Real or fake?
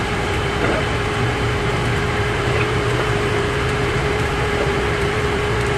fake